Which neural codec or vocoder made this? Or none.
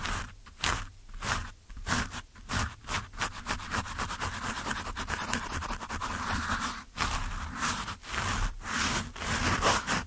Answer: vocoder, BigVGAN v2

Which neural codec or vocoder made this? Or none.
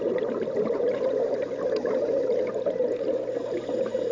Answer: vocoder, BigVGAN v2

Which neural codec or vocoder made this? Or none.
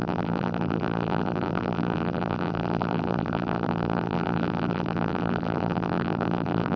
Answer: vocoder, BigVGAN v2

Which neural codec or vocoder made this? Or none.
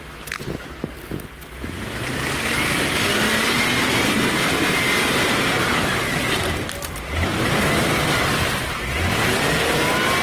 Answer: none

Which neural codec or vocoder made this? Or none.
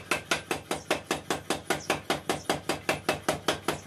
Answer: none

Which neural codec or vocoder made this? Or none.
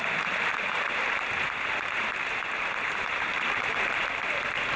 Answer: vocoder, BigVGAN v2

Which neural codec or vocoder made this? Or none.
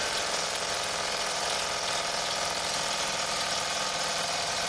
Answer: vocoder, BigVGAN v2